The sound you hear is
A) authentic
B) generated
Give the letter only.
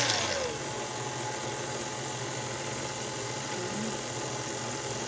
A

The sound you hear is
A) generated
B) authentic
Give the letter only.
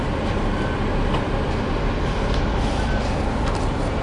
B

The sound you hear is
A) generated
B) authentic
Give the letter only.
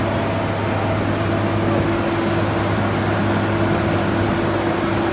B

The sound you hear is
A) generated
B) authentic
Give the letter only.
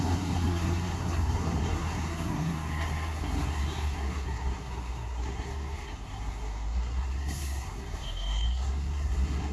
A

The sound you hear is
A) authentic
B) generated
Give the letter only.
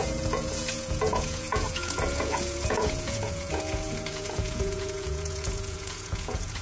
B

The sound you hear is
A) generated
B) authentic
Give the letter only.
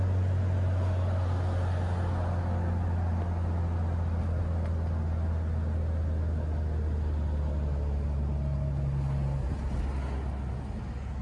B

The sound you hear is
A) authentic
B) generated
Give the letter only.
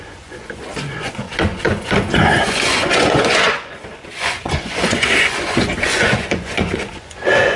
B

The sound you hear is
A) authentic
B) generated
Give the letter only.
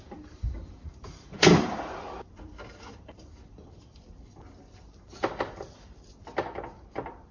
B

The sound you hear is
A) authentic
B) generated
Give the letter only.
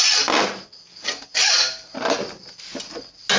A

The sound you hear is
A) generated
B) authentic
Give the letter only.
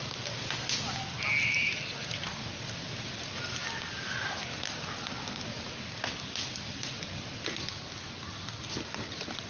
B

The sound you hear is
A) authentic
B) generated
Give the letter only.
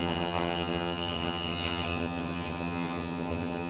B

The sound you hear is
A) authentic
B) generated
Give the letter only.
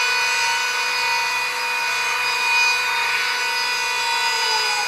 A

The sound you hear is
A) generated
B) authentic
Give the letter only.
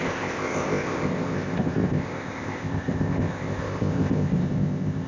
A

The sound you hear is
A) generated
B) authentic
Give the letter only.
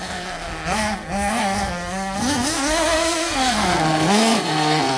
A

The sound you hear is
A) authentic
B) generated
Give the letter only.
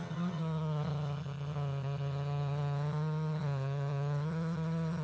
B